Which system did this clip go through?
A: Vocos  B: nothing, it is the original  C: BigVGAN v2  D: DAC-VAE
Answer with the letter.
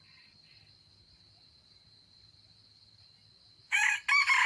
B